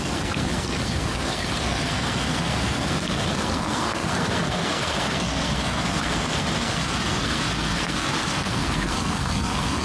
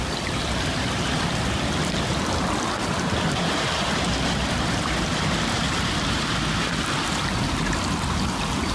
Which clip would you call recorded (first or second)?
second